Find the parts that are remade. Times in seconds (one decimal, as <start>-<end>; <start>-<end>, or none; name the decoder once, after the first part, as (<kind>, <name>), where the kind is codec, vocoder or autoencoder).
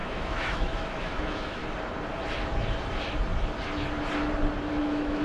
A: 0.0-1.6 (autoencoder, DAC-VAE); 4.7-5.2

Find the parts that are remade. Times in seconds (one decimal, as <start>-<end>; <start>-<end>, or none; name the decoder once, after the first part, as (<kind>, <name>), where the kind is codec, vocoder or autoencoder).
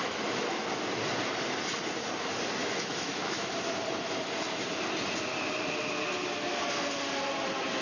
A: 0.0-0.6 (autoencoder, DAC-VAE); 2.6-3.5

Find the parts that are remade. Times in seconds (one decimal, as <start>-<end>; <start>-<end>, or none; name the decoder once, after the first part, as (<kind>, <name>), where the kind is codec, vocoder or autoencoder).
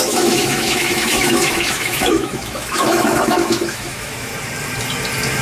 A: 0.0-4.3 (autoencoder, DAC-VAE)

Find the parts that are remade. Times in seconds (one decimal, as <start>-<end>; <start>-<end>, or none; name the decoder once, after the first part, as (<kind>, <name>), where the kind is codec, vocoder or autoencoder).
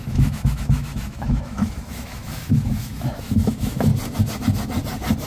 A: 0.0-3.9 (autoencoder, DAC-VAE)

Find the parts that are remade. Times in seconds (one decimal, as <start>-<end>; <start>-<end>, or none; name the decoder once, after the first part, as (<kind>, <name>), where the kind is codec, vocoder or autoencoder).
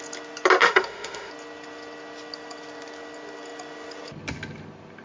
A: 0.6-1.3 (autoencoder, DAC-VAE)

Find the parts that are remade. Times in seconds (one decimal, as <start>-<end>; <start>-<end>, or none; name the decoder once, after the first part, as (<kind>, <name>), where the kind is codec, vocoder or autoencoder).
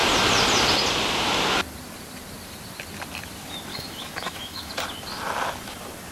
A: 3.7-4.7 (autoencoder, DAC-VAE)